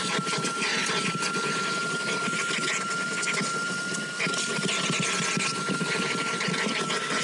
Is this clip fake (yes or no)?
no